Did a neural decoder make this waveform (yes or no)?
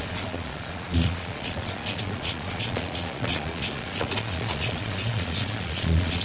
yes